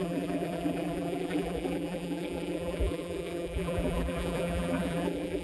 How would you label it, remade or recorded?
remade